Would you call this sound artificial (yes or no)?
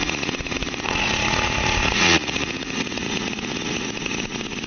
yes